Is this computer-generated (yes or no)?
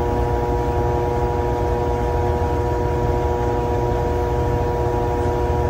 no